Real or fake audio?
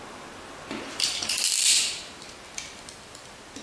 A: real